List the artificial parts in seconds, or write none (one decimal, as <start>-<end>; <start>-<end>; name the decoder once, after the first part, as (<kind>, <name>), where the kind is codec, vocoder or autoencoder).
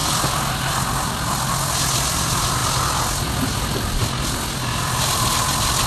none